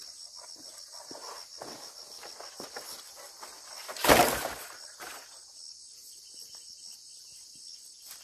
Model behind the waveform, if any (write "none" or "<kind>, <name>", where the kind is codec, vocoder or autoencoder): none